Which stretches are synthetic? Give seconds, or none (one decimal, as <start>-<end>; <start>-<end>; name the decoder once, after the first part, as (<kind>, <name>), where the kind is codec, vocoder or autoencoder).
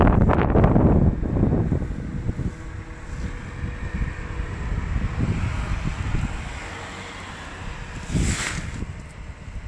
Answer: none